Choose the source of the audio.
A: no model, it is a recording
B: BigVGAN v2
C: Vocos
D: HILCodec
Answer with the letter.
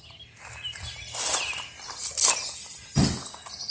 A